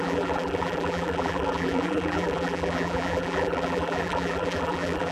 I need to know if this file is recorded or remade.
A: remade